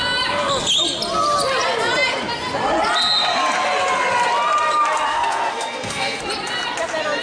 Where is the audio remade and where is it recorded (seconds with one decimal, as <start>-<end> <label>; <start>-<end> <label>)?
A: 0.0-5.1 recorded; 5.1-6.2 remade; 6.2-7.2 recorded

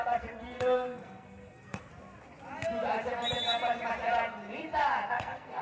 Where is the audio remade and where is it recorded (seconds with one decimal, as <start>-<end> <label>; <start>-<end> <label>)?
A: 0.0-1.9 remade; 1.9-5.1 recorded; 5.1-5.6 remade

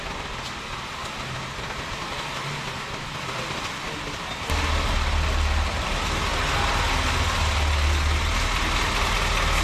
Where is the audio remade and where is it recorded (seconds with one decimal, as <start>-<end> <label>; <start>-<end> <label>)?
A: 0.0-9.6 recorded